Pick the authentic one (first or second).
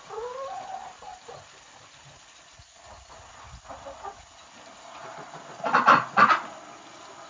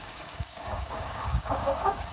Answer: first